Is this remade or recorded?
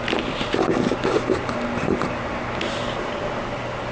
recorded